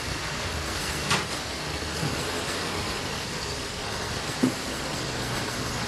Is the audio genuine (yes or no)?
no